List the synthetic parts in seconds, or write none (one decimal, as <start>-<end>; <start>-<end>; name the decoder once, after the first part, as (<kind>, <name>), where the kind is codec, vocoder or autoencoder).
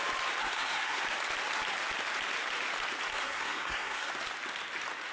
0.4-1.0 (codec, SNAC); 3.1-4.1